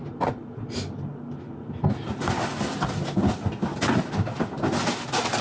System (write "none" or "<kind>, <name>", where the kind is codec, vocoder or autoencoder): none